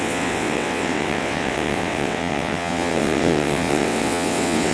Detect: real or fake fake